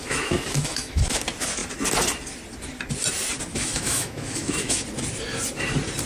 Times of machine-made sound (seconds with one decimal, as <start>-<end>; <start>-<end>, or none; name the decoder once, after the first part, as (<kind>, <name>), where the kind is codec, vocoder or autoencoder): 0.0-1.2 (autoencoder, DAC-VAE); 3.5-4.8